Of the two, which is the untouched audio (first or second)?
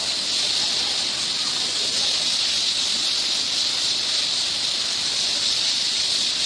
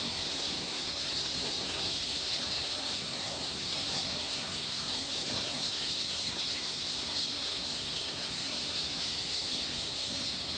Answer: first